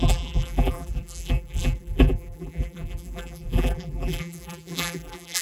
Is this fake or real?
fake